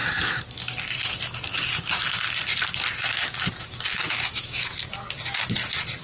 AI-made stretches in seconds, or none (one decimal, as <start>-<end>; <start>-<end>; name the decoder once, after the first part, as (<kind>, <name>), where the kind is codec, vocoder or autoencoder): 3.9-4.7 (autoencoder, DAC-VAE)